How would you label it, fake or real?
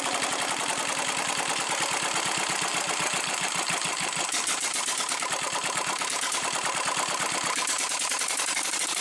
fake